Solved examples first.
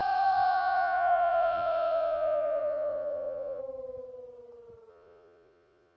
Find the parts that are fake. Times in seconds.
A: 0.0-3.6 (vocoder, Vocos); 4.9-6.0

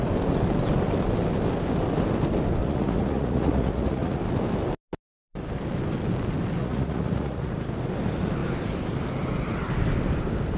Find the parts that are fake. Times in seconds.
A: 2.6-4.2 (vocoder, Vocos); 6.6-7.5

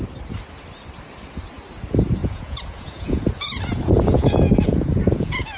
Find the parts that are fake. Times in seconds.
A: 2.2-5.6 (vocoder, Vocos)

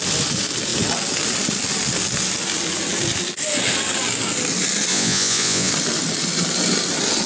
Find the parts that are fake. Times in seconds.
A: 4.9-5.7 (vocoder, Vocos)

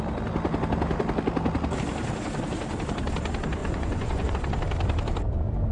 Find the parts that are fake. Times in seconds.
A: 3.6-4.3 (vocoder, Vocos)

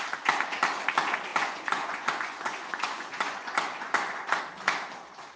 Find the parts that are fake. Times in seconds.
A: 1.3-4.4 (vocoder, Vocos)

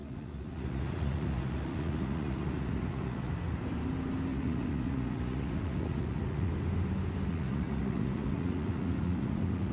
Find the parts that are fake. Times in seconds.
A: 0.0-3.3 (vocoder, Vocos); 4.3-6.5; 7.3-9.7

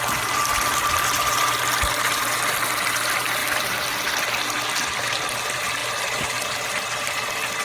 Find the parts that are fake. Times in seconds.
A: none